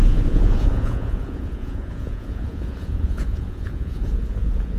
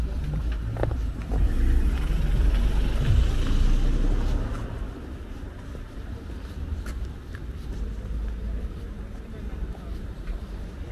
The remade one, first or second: first